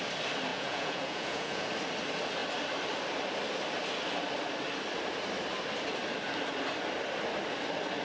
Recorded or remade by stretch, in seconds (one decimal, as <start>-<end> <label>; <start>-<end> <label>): 0.0-0.5 recorded; 0.5-1.7 remade; 1.7-8.0 recorded